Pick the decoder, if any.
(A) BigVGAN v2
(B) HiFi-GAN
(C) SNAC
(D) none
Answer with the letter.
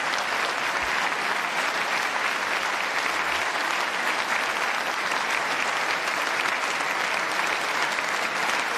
D